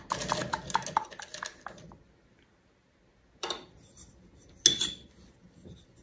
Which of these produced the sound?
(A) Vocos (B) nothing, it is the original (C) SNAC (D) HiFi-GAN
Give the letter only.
B